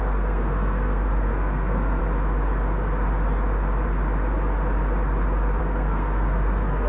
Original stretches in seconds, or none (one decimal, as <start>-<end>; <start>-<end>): 2.0-5.6